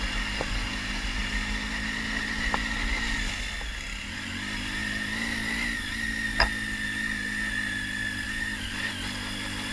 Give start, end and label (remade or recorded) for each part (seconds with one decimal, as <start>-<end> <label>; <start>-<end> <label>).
0.0-9.7 recorded